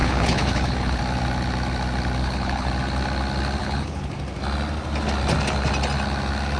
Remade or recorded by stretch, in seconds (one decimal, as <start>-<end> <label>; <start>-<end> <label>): 0.0-1.0 remade; 1.0-2.2 recorded; 2.2-2.7 remade; 2.7-3.6 recorded; 3.6-4.1 remade; 4.1-6.6 recorded

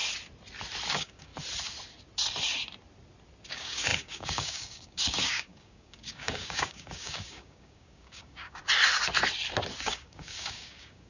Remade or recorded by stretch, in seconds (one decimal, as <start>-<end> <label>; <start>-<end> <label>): 0.0-0.9 recorded; 0.9-1.3 remade; 1.3-3.5 recorded; 3.5-8.6 remade; 8.6-9.8 recorded; 9.8-11.1 remade

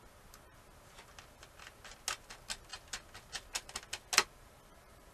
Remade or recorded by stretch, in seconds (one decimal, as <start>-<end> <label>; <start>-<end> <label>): 0.0-5.1 recorded

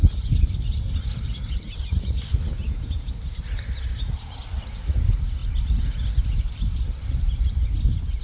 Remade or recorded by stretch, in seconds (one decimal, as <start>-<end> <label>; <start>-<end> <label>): 0.0-2.5 recorded; 2.5-3.1 remade; 3.1-8.2 recorded

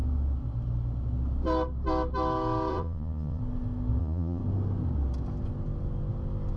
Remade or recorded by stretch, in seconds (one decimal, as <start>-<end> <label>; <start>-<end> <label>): 0.0-2.7 recorded; 2.7-3.4 remade; 3.4-4.0 recorded; 4.0-4.4 remade; 4.4-6.6 recorded